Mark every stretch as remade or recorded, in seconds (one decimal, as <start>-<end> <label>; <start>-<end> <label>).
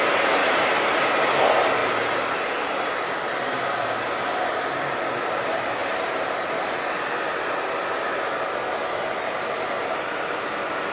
0.0-10.9 recorded